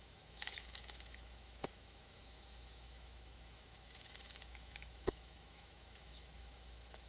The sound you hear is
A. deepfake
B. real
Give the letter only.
A